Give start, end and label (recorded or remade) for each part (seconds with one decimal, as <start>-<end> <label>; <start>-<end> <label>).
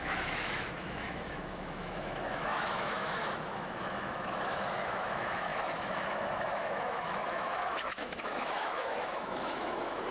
0.0-10.1 remade